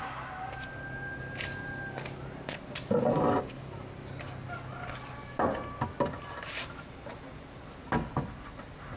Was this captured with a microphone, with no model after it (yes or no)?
yes